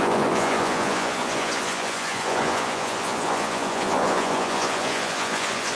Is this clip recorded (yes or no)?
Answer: no